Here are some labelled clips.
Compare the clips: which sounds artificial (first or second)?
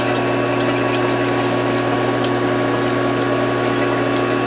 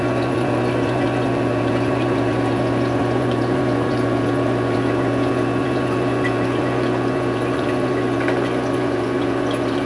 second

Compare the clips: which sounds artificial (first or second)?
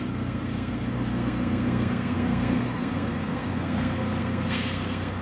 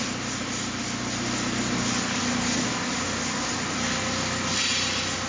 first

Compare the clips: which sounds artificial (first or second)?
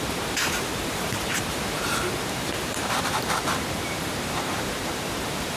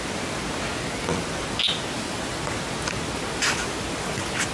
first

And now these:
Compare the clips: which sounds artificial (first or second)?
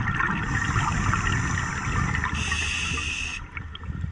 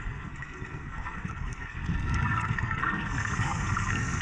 second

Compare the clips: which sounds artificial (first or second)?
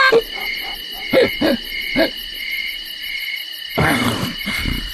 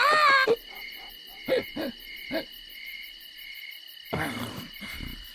first